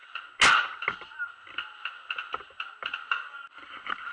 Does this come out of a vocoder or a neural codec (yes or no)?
no